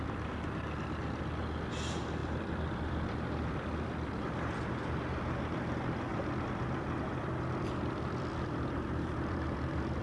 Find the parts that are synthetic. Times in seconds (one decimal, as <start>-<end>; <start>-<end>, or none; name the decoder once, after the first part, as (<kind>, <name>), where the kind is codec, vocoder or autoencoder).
2.2-4.7 (vocoder, BigVGAN v2); 6.1-10.0